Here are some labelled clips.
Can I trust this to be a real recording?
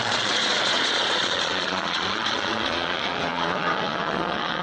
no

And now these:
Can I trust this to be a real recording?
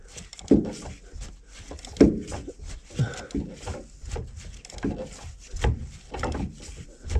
yes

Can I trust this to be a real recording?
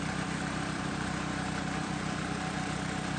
no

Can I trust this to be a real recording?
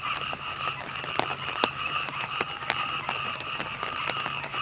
no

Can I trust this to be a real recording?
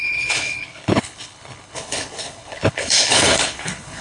no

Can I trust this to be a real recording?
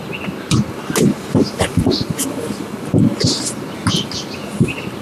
yes